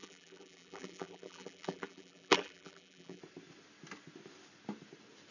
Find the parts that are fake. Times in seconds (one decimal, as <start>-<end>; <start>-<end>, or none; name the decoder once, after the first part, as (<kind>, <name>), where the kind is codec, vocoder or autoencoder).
0.0-3.2 (vocoder, BigVGAN v2)